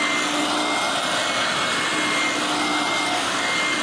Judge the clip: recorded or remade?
recorded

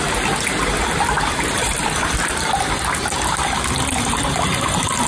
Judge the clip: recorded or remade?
recorded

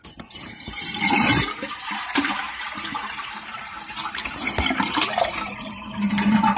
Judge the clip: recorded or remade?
remade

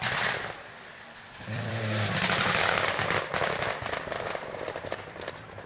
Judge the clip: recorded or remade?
remade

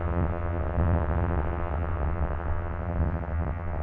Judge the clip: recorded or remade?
remade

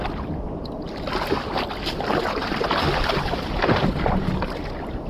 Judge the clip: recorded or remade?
recorded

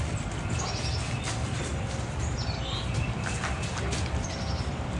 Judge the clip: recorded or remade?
remade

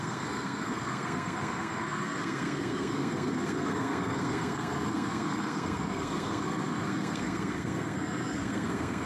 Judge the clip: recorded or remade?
remade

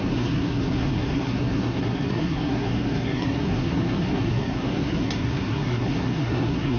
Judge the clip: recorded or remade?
remade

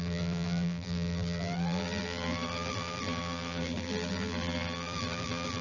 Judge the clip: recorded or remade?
remade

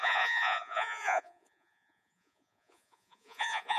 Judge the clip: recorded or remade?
remade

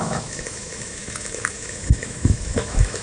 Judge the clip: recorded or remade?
remade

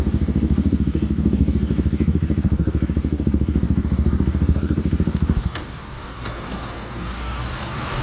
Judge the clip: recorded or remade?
remade